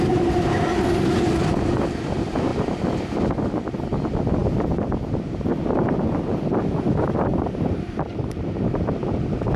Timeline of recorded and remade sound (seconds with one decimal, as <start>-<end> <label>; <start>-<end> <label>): 0.0-7.3 recorded; 7.3-8.5 remade; 8.5-9.6 recorded